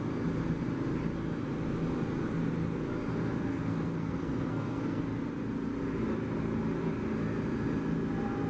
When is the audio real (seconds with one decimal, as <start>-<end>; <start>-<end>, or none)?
0.0-3.5; 5.0-8.5